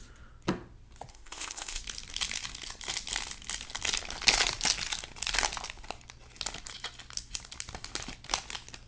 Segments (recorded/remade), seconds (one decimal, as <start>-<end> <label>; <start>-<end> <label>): 0.0-1.1 recorded; 1.1-1.8 remade; 1.8-8.9 recorded